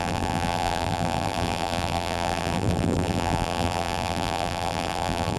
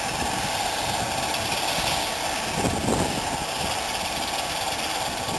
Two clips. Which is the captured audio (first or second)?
second